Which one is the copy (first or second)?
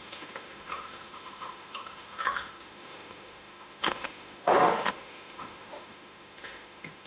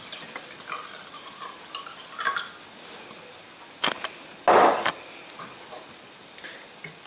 first